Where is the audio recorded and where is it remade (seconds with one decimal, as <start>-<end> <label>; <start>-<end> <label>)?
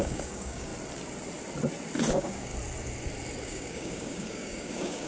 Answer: 0.0-0.7 remade; 0.7-2.1 recorded; 2.1-2.5 remade; 2.5-3.4 recorded; 3.4-5.1 remade